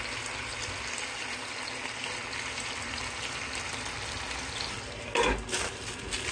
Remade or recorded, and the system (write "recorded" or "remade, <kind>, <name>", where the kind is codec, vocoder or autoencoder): recorded